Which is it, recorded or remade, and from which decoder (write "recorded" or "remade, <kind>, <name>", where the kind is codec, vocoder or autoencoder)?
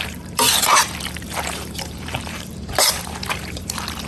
remade, vocoder, BigVGAN v2